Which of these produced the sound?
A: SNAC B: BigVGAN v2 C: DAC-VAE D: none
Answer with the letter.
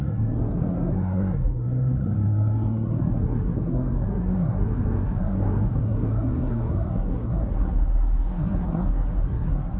A